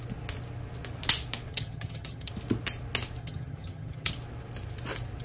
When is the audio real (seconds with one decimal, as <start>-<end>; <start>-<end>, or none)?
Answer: 0.0-1.5; 2.3-3.2; 4.1-5.2